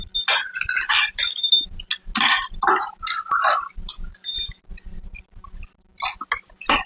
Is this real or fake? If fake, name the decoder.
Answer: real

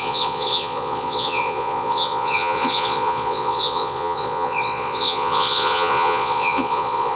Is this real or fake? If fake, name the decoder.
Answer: fake, vocoder, Vocos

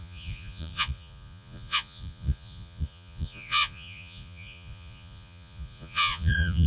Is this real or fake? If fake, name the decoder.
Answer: fake, vocoder, Vocos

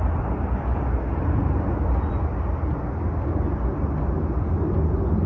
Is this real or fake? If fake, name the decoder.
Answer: real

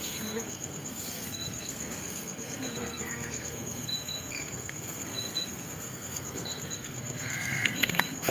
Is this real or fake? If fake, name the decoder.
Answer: fake, codec, SNAC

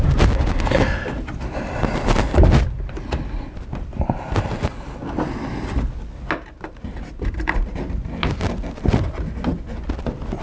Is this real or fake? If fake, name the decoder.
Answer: real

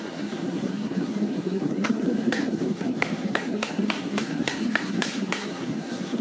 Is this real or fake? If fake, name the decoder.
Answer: fake, codec, SNAC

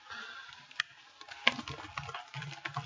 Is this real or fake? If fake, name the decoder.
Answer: real